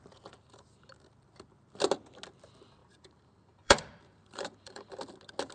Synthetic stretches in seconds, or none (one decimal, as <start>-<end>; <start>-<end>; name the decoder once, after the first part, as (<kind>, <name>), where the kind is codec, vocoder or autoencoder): 2.8-4.9 (vocoder, BigVGAN v2)